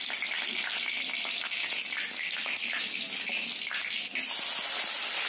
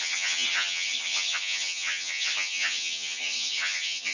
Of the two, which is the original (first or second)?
first